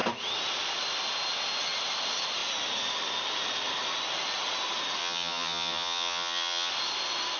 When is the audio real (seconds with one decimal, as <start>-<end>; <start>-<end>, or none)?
0.0-5.0; 6.7-7.4